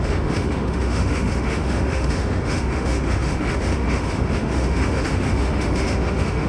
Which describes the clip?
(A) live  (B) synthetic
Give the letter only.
B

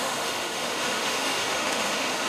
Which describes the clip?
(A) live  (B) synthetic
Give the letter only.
B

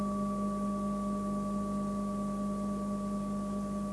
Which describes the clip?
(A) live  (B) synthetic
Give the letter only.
A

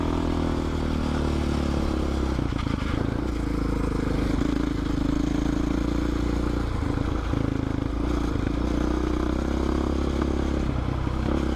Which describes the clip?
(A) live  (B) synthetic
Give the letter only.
A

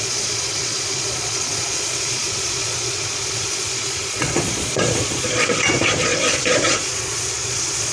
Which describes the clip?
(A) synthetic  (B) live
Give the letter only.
A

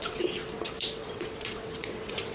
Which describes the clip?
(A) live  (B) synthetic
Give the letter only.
B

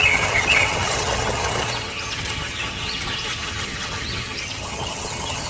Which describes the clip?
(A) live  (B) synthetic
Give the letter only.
B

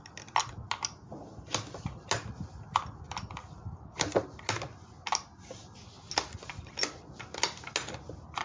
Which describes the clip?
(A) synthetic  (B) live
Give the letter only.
B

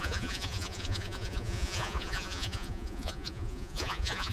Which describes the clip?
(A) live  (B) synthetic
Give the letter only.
B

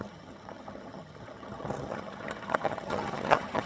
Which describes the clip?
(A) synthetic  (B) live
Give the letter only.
A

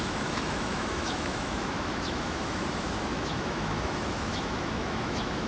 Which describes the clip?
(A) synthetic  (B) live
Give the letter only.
A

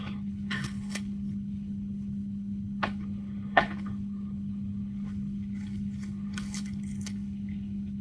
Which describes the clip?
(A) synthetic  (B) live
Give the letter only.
A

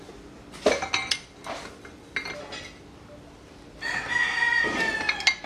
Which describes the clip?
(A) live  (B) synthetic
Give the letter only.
A